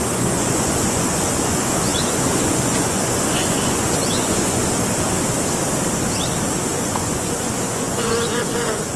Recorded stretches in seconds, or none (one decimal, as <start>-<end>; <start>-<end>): 4.6-6.7